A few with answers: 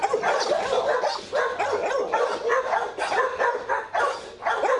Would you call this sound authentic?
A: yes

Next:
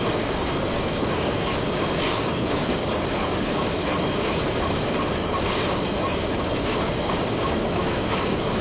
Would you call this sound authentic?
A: no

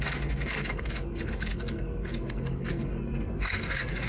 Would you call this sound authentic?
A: no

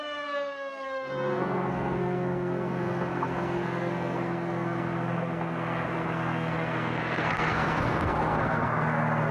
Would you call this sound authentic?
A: no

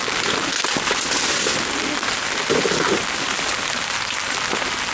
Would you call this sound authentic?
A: yes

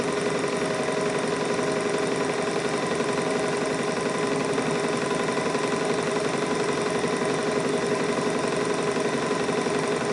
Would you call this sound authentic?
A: yes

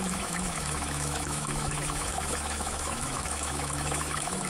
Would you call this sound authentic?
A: no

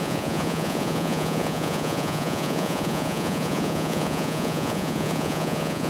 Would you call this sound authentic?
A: no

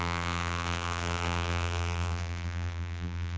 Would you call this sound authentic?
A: no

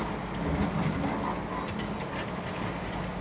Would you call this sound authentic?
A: yes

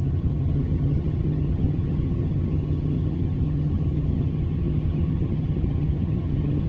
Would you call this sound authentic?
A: no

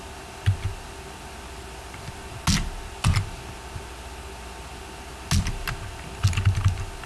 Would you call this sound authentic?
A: yes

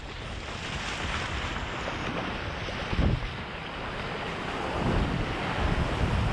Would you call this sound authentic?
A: yes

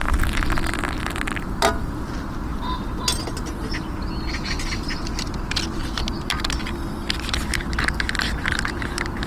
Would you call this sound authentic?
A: yes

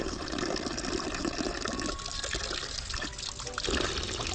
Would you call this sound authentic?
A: yes